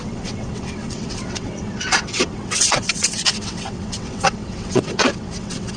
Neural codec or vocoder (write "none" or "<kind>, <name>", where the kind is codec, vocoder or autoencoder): vocoder, WaveNeXt